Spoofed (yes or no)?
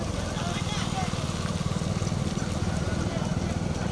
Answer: no